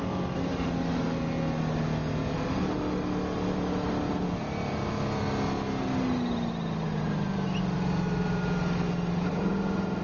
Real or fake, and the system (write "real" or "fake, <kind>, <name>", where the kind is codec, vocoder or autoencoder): real